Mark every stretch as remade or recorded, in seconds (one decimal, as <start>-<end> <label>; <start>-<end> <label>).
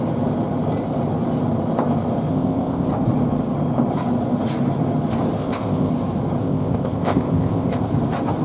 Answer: 0.0-2.3 recorded; 2.3-2.9 remade; 2.9-5.4 recorded; 5.4-5.9 remade; 5.9-6.4 recorded; 6.4-7.9 remade; 7.9-8.4 recorded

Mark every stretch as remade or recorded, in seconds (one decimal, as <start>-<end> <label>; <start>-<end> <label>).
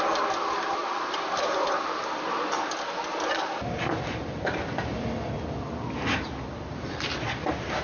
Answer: 0.0-7.8 recorded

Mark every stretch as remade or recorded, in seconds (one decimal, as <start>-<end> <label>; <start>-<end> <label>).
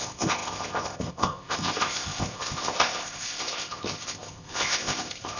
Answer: 0.0-5.4 remade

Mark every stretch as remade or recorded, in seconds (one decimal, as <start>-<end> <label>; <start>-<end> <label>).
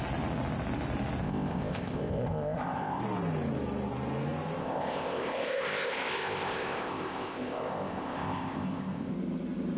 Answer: 0.0-1.2 recorded; 1.2-3.0 remade; 3.0-4.6 recorded; 4.6-9.1 remade; 9.1-9.8 recorded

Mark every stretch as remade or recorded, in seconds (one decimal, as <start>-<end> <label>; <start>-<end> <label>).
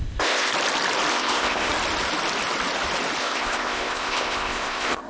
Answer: 0.0-0.5 remade; 0.5-1.1 recorded; 1.1-1.7 remade; 1.7-3.2 recorded; 3.2-5.1 remade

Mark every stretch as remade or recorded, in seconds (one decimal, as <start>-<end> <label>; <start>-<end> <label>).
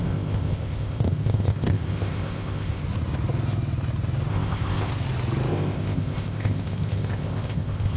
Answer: 0.0-2.8 remade; 2.8-4.3 recorded; 4.3-4.9 remade; 4.9-5.5 recorded; 5.5-8.0 remade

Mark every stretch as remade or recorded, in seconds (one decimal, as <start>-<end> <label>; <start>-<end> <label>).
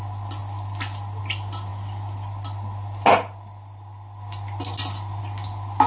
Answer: 0.0-5.9 recorded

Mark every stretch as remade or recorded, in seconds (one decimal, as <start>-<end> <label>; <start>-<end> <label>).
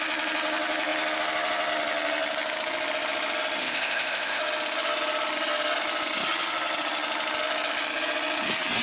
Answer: 0.0-3.6 recorded; 3.6-4.4 remade; 4.4-8.8 recorded